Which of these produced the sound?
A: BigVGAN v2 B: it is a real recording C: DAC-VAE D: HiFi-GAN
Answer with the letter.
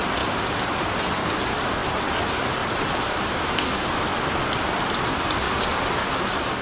B